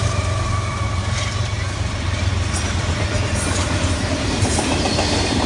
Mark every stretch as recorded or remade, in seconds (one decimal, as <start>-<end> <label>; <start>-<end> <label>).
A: 0.0-2.3 remade; 2.3-3.7 recorded; 3.7-5.5 remade